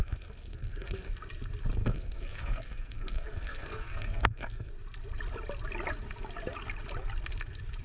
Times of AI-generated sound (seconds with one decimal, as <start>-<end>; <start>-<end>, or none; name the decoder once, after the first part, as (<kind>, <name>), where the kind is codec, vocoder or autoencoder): 0.0-1.1 (codec, SNAC); 1.8-4.7